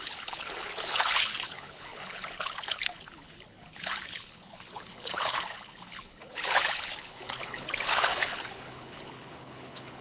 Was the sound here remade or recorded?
remade